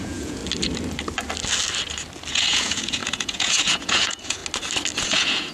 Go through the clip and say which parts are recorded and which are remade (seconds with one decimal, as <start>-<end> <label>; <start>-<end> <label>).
0.0-0.4 remade; 0.4-2.3 recorded; 2.3-4.4 remade; 4.4-5.0 recorded; 5.0-5.5 remade